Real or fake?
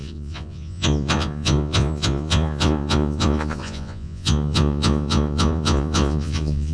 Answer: fake